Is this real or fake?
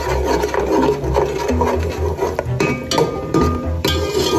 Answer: real